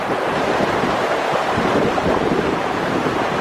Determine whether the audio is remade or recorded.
remade